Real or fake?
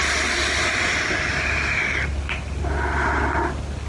real